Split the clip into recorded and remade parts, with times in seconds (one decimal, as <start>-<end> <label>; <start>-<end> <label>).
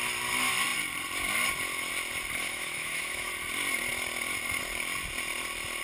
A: 0.0-2.4 recorded; 2.4-3.3 remade; 3.3-5.8 recorded